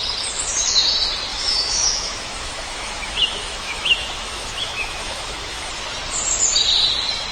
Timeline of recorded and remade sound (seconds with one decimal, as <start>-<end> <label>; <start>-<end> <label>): 0.0-1.3 recorded; 1.3-5.7 remade; 5.7-7.3 recorded

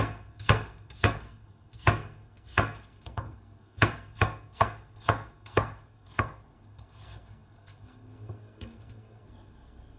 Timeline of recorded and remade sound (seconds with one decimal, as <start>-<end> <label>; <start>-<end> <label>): 0.0-10.0 remade